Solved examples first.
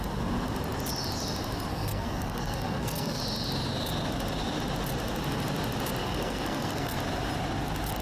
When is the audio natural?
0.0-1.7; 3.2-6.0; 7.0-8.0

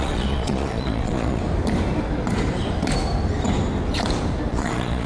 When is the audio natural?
1.4-4.5

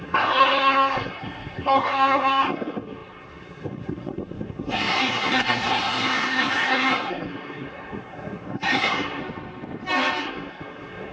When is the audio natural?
9.2-10.2

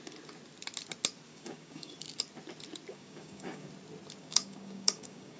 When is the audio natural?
0.0-1.3; 1.9-2.9; 3.7-4.2

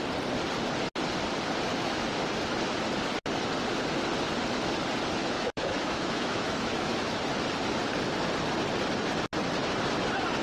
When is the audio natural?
0.0-1.7; 2.2-5.2; 7.2-10.4

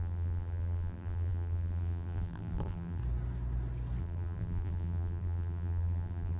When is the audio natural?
3.0-4.0

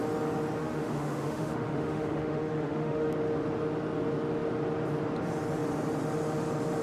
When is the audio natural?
0.0-0.6; 3.1-6.8